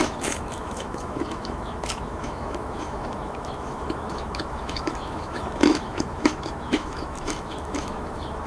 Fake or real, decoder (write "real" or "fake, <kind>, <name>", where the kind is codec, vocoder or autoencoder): fake, autoencoder, DAC-VAE